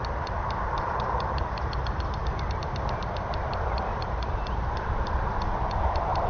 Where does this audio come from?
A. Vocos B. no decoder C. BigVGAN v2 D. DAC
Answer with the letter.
C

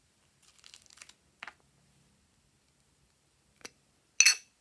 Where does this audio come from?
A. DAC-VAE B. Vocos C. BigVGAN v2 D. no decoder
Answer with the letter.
D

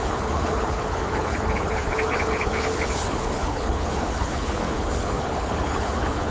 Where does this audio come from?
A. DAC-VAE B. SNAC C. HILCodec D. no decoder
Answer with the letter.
C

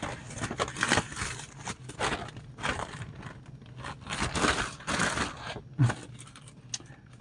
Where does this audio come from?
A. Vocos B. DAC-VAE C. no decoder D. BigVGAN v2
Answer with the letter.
C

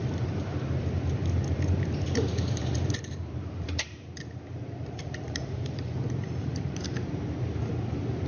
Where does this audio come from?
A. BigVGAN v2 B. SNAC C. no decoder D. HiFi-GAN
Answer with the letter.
A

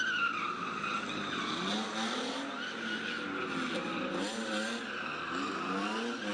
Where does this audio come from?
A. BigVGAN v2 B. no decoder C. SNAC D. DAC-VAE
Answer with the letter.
B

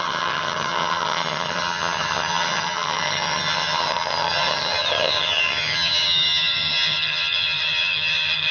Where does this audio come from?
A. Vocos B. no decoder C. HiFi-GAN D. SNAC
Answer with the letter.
C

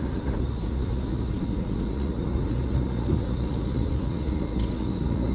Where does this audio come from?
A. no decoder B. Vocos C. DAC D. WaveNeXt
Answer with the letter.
B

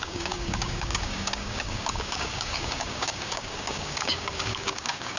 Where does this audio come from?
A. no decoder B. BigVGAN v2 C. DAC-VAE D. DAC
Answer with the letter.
D